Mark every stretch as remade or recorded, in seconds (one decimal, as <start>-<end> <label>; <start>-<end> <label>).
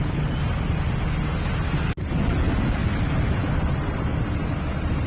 0.0-5.1 recorded